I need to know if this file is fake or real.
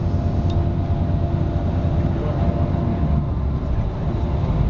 real